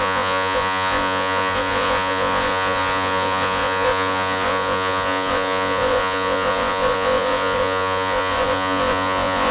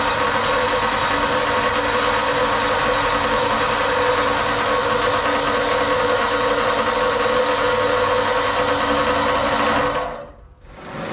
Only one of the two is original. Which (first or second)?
second